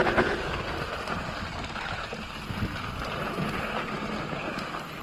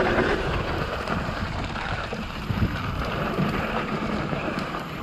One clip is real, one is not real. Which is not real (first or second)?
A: second